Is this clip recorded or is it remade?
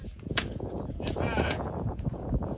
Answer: remade